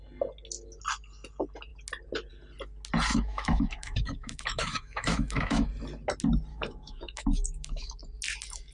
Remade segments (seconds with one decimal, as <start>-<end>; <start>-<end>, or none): 3.1-5.7; 6.5-8.0